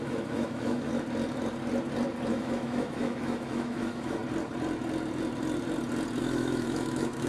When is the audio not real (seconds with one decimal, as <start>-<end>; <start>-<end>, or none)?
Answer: 0.0-0.9; 2.3-4.2; 6.2-7.3